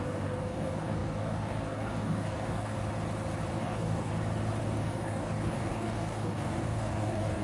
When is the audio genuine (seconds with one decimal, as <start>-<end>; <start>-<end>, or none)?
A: 2.8-3.5; 4.1-4.6